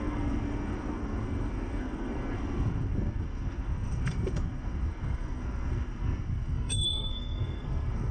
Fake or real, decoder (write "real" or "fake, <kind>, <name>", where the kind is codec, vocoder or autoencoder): fake, codec, SNAC